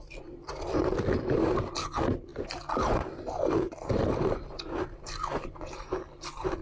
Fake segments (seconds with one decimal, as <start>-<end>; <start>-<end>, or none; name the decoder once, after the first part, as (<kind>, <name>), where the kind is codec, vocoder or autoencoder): none